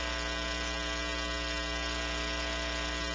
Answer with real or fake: real